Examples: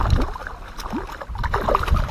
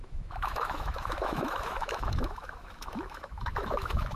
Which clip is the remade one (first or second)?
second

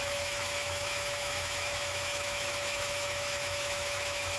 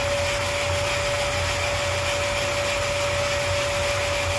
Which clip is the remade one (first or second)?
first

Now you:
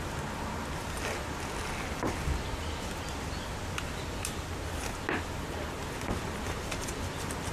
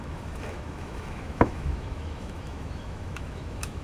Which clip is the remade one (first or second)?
second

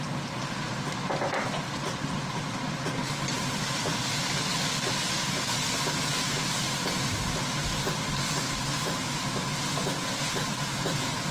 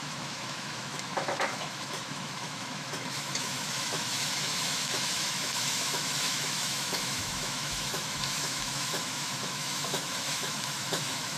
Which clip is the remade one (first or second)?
second